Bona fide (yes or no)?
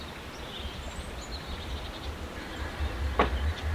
yes